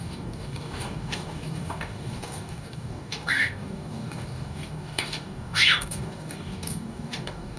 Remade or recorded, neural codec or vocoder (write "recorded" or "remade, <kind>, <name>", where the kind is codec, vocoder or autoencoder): remade, codec, DAC